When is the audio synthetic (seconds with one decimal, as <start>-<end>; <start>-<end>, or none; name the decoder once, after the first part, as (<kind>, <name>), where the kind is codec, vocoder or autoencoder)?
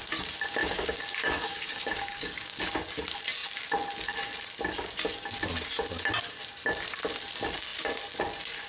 0.6-2.6 (codec, DAC)